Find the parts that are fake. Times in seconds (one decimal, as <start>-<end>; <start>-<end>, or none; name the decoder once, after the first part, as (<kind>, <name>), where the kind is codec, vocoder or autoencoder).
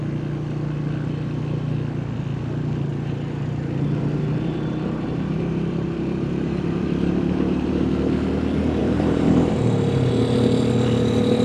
2.9-7.9 (vocoder, BigVGAN v2); 8.8-9.5